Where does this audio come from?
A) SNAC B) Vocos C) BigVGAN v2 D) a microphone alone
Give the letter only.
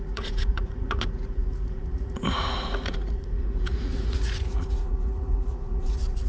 B